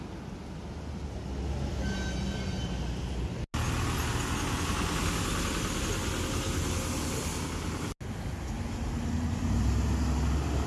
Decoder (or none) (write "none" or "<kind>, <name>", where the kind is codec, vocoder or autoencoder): none